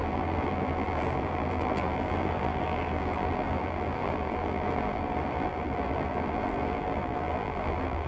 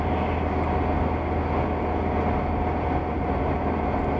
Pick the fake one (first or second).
first